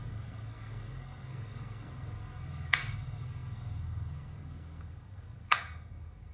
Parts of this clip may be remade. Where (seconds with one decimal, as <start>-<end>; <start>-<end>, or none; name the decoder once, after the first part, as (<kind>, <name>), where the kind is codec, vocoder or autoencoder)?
0.0-6.3 (codec, SNAC)

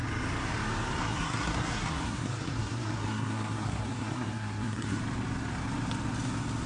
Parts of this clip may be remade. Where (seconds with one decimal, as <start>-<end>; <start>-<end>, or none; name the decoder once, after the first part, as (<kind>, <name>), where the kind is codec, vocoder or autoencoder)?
1.0-5.0 (codec, SNAC)

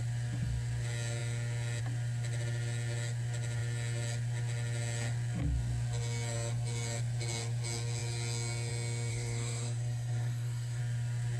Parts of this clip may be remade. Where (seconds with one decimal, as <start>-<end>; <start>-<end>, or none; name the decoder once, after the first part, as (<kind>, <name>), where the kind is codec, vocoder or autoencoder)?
9.1-10.8 (codec, SNAC)

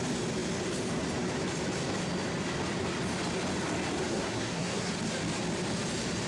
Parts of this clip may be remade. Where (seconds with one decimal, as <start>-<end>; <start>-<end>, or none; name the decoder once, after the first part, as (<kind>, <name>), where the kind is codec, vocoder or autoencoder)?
4.1-4.9 (codec, SNAC)